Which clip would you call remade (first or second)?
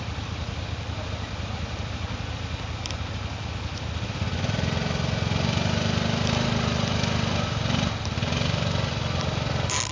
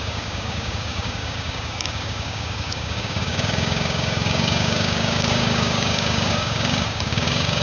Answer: second